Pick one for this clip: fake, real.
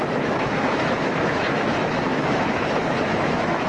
fake